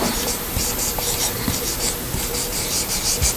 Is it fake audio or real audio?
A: real